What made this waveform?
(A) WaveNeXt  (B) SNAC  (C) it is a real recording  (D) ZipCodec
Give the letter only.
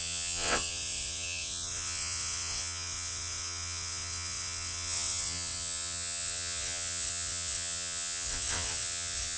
A